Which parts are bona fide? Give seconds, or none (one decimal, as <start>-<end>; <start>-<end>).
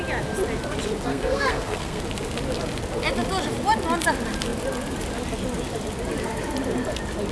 0.0-1.1; 2.0-7.3